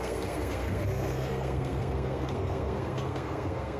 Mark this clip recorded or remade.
remade